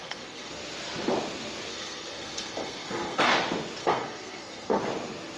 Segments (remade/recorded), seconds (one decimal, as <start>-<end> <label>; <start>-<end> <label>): 0.0-0.5 remade; 0.5-1.7 recorded; 1.7-3.3 remade; 3.3-3.8 recorded; 3.8-4.8 remade; 4.8-5.4 recorded